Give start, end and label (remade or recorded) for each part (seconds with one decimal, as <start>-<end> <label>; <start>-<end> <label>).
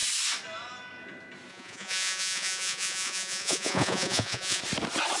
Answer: 0.0-1.5 recorded; 1.5-4.6 remade; 4.6-5.2 recorded